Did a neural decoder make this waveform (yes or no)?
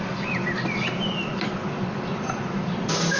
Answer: no